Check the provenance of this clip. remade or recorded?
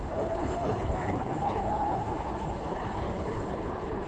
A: remade